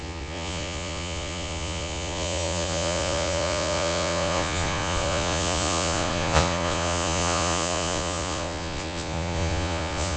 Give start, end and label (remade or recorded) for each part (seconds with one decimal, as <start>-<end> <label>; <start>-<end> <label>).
0.0-10.2 remade